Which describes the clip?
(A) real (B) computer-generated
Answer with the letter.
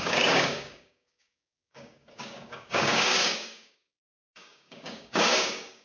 B